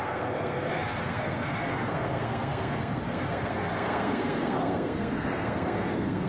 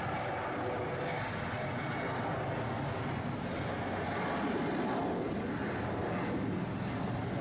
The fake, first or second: first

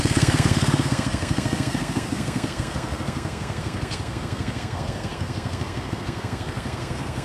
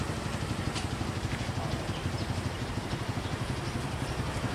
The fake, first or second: first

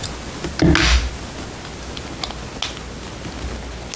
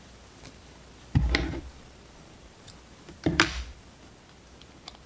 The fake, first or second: second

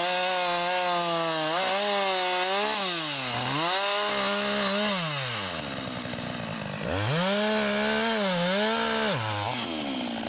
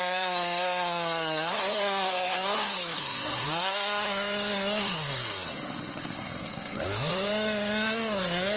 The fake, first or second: second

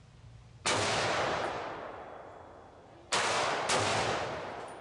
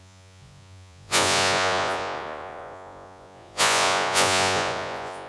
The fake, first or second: second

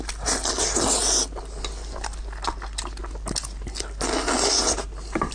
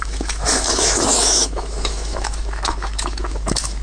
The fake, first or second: second